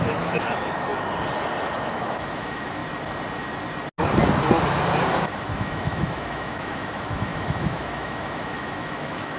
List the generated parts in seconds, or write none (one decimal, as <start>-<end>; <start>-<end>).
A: 0.0-0.9; 1.8-2.8; 5.2-9.4